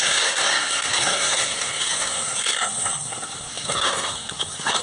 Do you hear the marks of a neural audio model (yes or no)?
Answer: yes